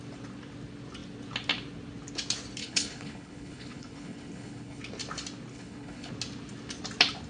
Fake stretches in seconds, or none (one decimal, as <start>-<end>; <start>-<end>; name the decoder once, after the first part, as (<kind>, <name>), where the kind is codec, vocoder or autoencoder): 2.6-4.8 (codec, HILCodec); 5.5-6.1